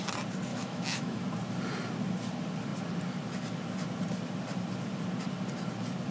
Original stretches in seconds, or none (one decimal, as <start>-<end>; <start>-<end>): 0.0-0.5; 1.2-6.1